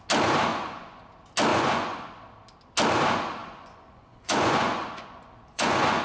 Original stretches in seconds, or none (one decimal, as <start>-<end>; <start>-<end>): 0.0-0.5; 1.0-1.5; 2.1-3.4